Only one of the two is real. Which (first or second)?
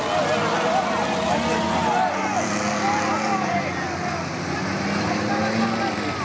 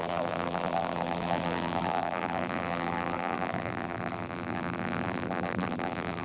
first